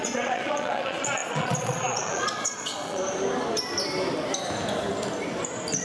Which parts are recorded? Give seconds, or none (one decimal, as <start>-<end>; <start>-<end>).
3.0-5.8